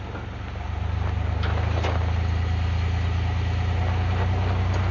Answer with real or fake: real